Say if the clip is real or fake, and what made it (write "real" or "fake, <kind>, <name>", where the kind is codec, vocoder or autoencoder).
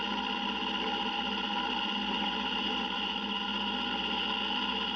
real